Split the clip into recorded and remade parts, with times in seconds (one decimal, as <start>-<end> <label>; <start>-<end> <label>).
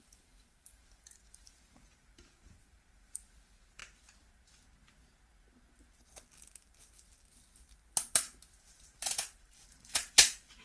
0.0-3.8 remade; 3.8-8.7 recorded; 8.7-10.6 remade